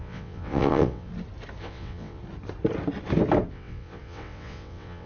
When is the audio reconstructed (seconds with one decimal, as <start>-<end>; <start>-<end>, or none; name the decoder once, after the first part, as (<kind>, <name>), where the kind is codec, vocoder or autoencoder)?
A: 0.0-1.1 (vocoder, WaveNeXt); 1.6-2.2; 3.5-5.1